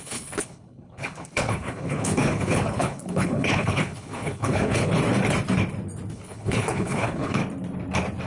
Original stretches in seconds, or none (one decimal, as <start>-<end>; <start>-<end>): 5.0-6.1; 7.4-8.3